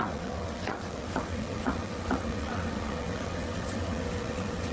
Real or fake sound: fake